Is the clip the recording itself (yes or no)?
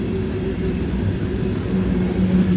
yes